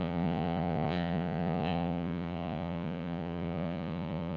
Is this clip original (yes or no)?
no